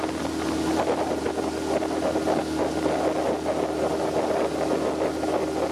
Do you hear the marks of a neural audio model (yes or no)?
no